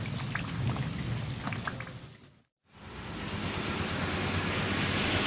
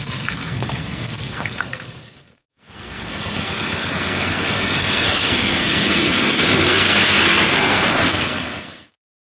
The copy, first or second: second